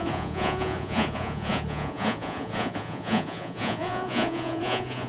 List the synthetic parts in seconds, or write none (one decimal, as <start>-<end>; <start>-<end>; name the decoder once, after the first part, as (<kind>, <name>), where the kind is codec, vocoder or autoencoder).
0.0-5.1 (vocoder, Vocos)